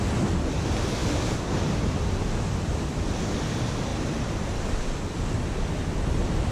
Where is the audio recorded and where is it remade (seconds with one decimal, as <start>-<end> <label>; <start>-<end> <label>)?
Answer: 0.0-3.9 recorded; 3.9-4.6 remade; 4.6-6.5 recorded